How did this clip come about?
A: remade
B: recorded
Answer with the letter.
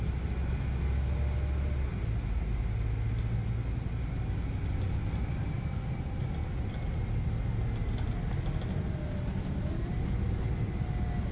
B